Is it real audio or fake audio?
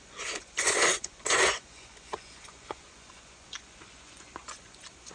fake